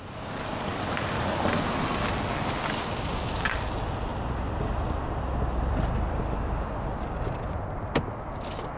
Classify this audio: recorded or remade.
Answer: recorded